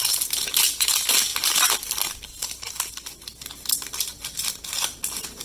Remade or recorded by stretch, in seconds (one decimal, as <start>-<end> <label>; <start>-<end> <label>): 0.0-5.4 recorded